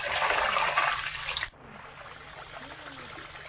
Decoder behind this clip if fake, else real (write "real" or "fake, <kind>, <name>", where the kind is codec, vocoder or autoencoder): real